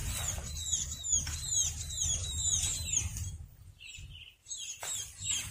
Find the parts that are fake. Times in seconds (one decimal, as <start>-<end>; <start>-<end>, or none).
2.2-4.6